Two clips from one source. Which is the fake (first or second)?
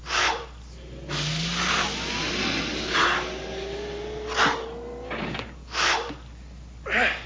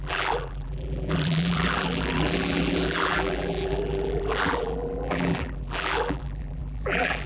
second